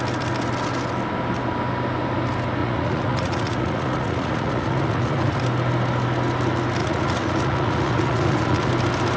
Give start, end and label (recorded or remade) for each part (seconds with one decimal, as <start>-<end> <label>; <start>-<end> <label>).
0.0-2.6 recorded; 2.6-5.4 remade; 5.4-6.8 recorded; 6.8-8.7 remade; 8.7-9.2 recorded